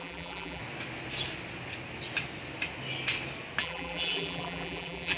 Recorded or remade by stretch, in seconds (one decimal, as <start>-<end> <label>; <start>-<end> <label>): 0.0-0.6 remade; 0.6-3.6 recorded; 3.6-5.2 remade